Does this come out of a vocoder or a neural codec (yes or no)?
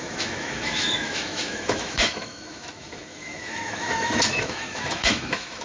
yes